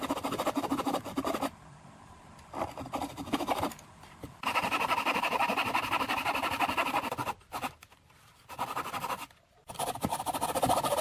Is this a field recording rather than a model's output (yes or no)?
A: yes